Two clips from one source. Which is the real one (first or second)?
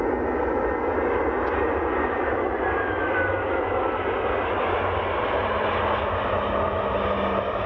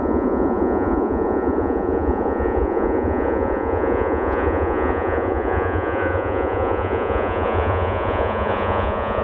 first